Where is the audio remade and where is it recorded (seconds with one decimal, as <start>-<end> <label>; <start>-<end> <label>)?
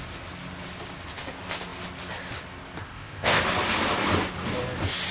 0.0-2.8 recorded; 2.8-3.4 remade; 3.4-5.1 recorded